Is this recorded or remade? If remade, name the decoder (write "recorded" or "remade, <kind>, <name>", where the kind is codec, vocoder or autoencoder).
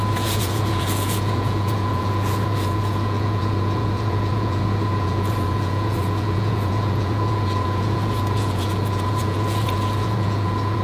remade, vocoder, Vocos